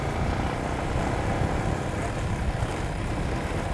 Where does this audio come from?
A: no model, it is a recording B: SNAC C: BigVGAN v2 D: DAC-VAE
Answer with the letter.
A